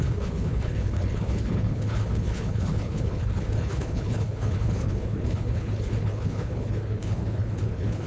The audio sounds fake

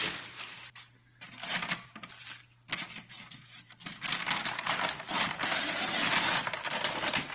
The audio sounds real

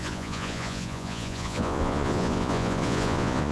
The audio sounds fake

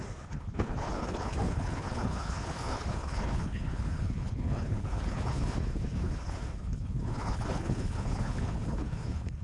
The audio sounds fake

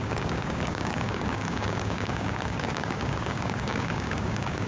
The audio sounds fake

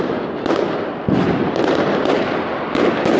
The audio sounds real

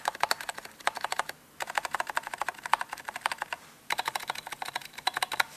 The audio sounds real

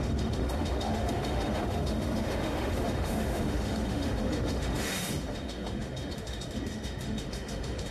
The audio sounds fake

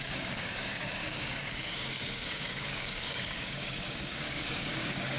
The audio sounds fake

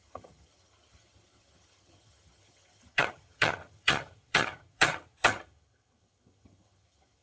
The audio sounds fake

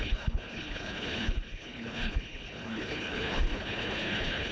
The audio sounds fake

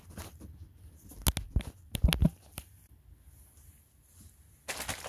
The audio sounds real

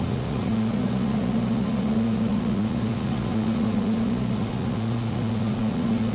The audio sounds fake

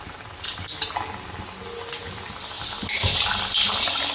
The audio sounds real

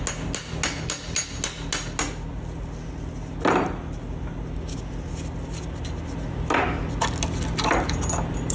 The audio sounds real